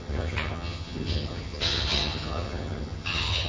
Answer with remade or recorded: remade